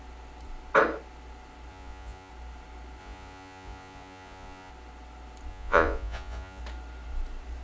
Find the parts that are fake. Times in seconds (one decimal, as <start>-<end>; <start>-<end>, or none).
1.7-2.3; 3.0-4.7; 5.5-6.6

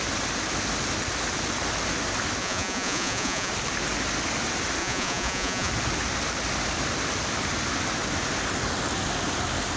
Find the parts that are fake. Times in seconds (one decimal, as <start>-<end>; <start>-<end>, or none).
2.4-3.5; 4.8-5.7

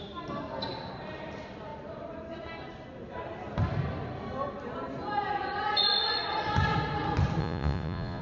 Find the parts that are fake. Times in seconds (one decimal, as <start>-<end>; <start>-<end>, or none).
7.4-8.2

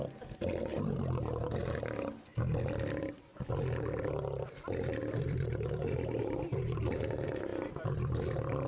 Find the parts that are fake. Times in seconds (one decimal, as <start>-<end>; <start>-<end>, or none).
none